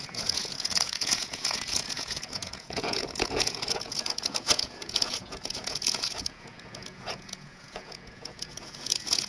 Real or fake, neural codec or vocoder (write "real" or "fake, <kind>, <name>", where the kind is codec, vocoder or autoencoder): fake, vocoder, Vocos